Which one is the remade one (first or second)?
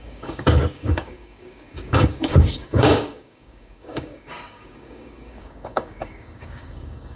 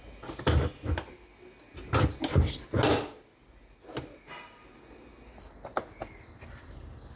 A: first